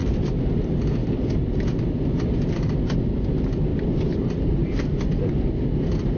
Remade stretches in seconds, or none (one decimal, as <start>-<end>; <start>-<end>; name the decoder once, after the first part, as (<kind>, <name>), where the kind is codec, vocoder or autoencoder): 0.0-0.5 (vocoder, BigVGAN v2); 3.7-5.5